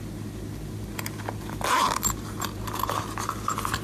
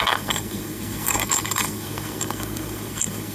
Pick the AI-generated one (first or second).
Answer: second